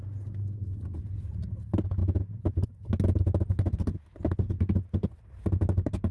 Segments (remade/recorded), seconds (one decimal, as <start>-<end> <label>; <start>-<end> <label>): 0.0-6.1 recorded

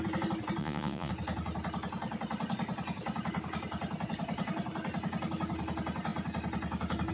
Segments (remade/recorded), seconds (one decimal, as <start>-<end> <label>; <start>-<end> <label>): 0.0-0.6 recorded; 0.6-1.1 remade; 1.1-7.1 recorded

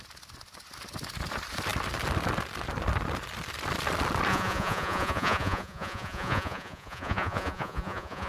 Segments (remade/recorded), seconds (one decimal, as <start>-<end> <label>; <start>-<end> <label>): 0.0-4.3 recorded; 4.3-8.3 remade

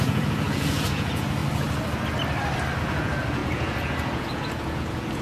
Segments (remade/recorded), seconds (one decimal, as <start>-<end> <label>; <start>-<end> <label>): 0.0-1.4 remade; 1.4-2.8 recorded; 2.8-5.2 remade

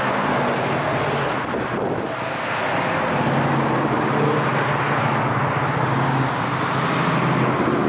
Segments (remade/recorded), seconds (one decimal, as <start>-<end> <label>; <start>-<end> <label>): 0.0-7.9 recorded

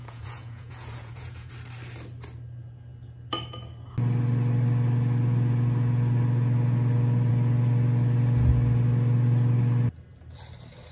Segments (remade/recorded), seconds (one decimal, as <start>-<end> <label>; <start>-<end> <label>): 0.0-1.5 remade; 1.5-10.9 recorded